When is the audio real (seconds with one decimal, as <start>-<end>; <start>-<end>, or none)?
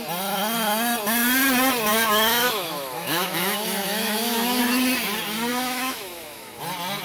0.0-1.9; 4.6-5.5; 6.6-7.0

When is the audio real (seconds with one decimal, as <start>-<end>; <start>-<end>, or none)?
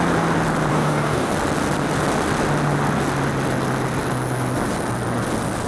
0.0-0.7; 1.3-5.7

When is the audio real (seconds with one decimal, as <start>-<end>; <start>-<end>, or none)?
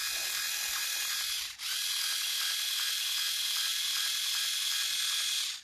1.9-2.5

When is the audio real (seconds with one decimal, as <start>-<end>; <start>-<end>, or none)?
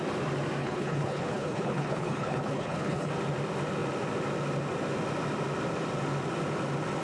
0.0-0.6; 3.1-7.0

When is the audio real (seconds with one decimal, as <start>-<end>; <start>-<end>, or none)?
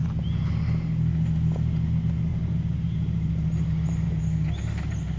0.5-2.3; 4.2-5.2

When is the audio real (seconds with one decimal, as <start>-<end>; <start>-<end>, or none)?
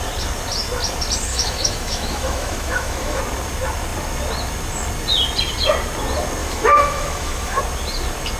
0.0-1.3; 3.2-6.4; 7.6-8.4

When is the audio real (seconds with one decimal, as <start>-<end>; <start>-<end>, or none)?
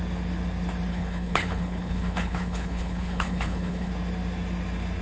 0.0-0.9; 3.9-5.0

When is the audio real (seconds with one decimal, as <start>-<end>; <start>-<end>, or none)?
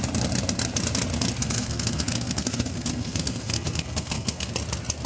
0.0-1.4; 4.5-5.1